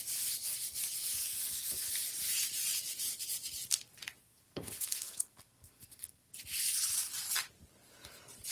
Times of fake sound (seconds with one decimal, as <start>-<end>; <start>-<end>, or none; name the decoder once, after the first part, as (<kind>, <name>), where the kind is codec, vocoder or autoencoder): 1.2-1.9 (codec, SNAC); 4.2-6.3